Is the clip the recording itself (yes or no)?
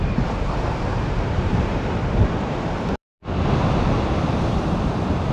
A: no